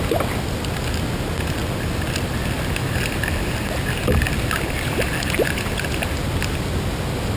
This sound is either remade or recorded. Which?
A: recorded